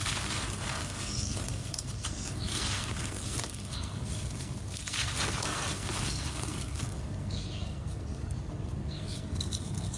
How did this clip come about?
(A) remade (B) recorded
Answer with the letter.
A